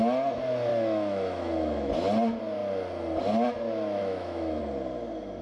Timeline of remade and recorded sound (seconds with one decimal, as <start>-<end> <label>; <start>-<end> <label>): 0.0-0.7 recorded; 0.7-1.9 remade; 1.9-4.0 recorded; 4.0-4.6 remade; 4.6-5.4 recorded